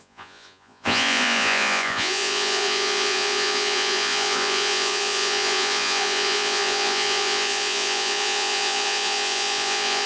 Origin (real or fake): fake